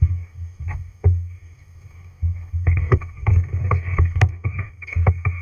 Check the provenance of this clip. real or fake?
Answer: fake